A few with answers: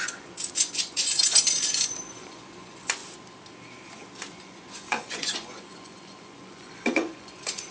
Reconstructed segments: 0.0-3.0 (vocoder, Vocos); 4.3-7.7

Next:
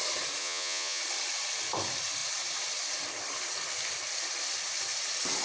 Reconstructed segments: 0.4-1.0 (vocoder, Vocos)

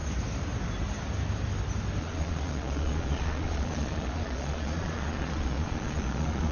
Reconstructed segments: 2.0-6.5 (vocoder, Vocos)

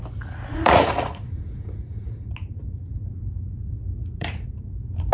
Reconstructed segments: 0.5-2.3 (vocoder, Vocos); 4.0-4.6

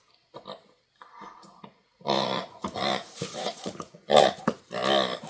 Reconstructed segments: 1.3-4.5 (vocoder, Vocos)

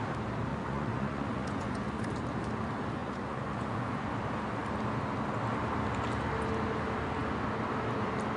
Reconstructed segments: 0.5-2.1 (vocoder, Vocos); 3.0-4.1